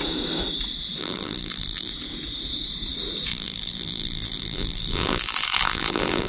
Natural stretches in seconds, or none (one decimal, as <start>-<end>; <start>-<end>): 0.0-1.0; 1.9-3.3